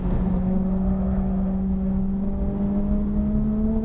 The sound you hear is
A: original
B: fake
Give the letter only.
A